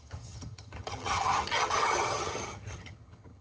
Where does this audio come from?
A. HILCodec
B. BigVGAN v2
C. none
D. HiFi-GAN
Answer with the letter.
D